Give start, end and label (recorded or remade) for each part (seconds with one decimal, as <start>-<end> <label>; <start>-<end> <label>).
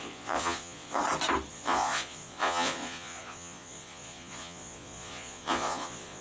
0.0-1.0 remade; 1.0-1.5 recorded; 1.5-6.2 remade